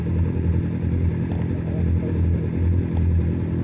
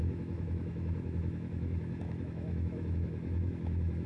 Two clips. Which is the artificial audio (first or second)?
second